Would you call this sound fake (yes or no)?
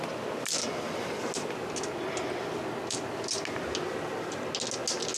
no